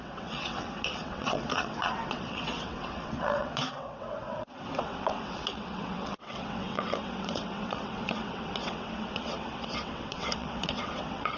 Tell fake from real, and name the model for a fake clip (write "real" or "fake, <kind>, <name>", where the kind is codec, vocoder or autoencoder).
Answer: fake, vocoder, WaveNeXt